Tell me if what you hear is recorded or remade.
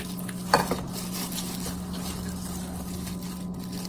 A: recorded